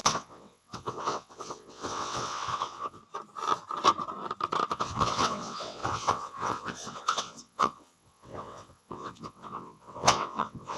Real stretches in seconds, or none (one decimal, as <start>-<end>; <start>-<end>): 3.0-4.7